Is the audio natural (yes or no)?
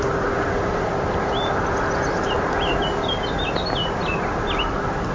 yes